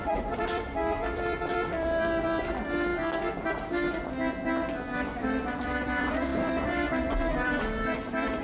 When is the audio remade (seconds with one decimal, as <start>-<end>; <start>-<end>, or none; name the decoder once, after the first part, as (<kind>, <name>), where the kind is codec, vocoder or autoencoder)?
0.0-2.9 (vocoder, BigVGAN v2); 5.6-8.4